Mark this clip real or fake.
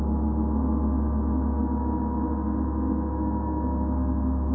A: real